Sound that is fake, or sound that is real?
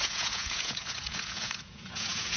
fake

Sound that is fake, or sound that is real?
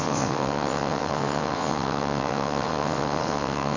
fake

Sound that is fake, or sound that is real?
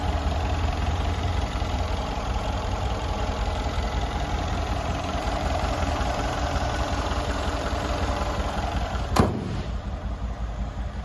fake